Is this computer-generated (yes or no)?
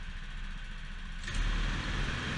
no